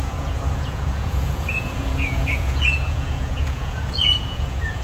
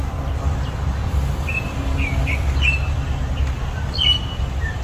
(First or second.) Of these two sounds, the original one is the second